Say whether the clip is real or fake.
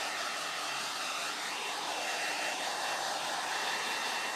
real